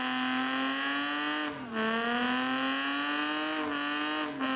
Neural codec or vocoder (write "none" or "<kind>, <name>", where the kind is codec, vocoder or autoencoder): none